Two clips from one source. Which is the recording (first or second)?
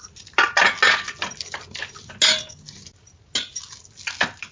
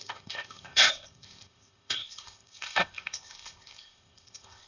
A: first